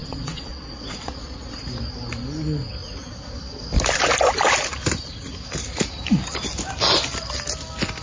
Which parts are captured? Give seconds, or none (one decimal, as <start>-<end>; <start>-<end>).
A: 1.6-8.0